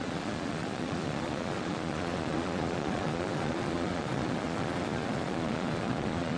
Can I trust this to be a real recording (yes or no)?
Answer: no